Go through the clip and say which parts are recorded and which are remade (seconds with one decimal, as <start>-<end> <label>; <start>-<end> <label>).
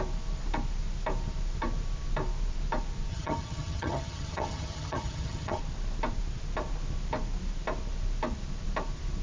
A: 0.0-3.1 recorded; 3.1-5.6 remade; 5.6-9.2 recorded